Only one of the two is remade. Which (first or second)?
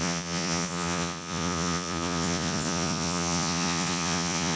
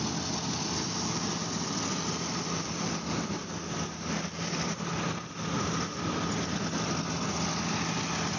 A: first